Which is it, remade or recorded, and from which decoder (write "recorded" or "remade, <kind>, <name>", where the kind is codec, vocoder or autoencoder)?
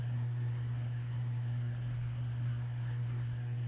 remade, codec, SNAC